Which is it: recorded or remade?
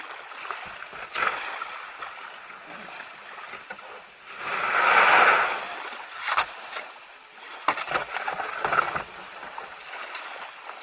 recorded